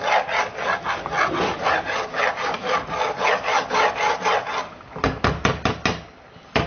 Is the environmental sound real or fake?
real